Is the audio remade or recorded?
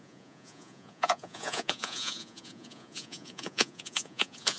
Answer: remade